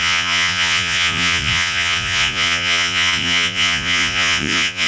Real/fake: fake